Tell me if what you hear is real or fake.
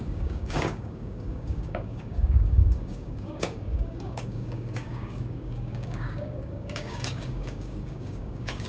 fake